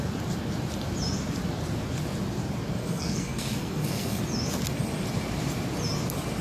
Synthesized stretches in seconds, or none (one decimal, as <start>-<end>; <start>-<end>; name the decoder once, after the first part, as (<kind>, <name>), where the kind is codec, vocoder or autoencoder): 2.8-4.2 (codec, SNAC)